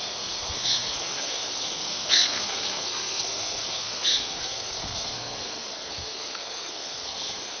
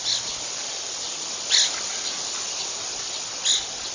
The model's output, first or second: first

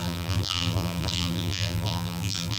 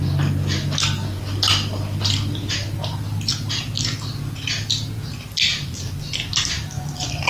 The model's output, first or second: first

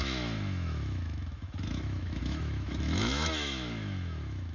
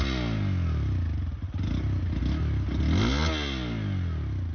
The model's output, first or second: first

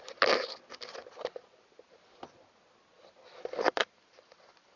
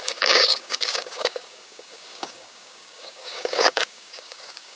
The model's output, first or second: second